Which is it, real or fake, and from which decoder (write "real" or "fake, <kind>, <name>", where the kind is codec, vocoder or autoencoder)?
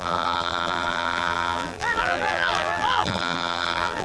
fake, vocoder, BigVGAN v2